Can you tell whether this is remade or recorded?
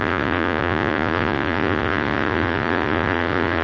remade